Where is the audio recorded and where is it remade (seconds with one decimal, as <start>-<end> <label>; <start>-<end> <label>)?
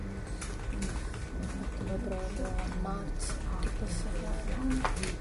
0.0-5.2 recorded